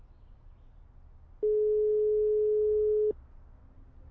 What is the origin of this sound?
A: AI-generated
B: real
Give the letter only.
B